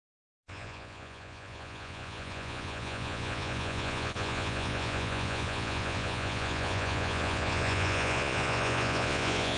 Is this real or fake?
fake